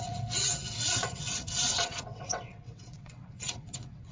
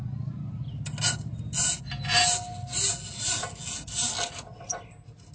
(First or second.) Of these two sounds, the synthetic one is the first